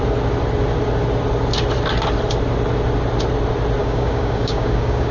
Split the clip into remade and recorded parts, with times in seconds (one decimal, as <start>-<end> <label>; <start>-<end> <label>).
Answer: 0.0-3.8 recorded; 3.8-5.1 remade